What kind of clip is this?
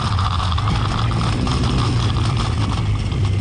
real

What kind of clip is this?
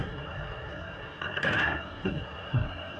fake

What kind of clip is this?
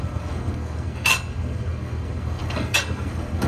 fake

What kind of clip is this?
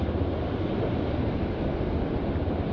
real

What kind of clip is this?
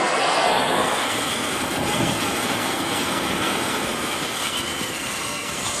fake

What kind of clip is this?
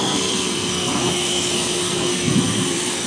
fake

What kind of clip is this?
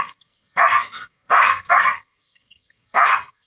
fake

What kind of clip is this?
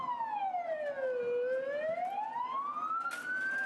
real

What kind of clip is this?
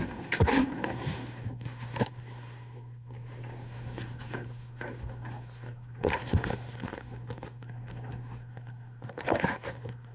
fake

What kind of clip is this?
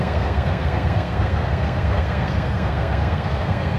fake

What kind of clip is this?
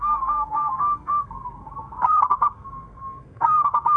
fake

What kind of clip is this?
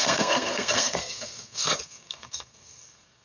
fake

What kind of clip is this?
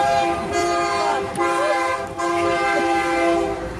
real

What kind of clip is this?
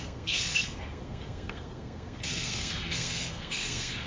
fake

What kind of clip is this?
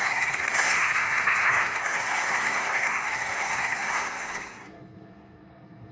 fake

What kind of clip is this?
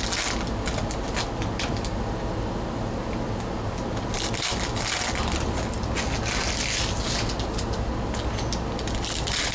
real